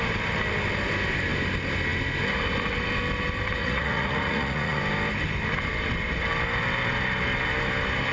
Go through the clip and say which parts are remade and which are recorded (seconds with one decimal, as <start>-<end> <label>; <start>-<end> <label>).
0.0-3.6 recorded; 3.6-4.8 remade; 4.8-8.1 recorded